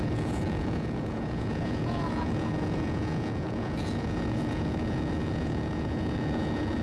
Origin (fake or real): fake